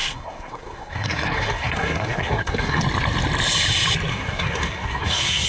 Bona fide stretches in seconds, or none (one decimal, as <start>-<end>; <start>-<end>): 2.8-4.1